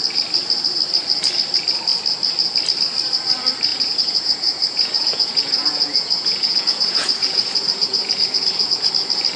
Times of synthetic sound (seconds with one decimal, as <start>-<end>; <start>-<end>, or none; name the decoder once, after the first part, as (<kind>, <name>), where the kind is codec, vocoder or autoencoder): 3.7-8.9 (vocoder, Vocos)